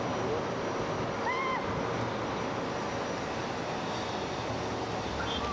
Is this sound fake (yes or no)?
no